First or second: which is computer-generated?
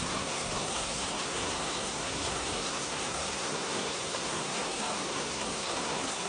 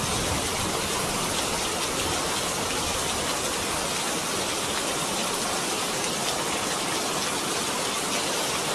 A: first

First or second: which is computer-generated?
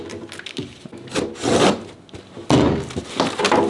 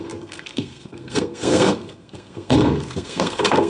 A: second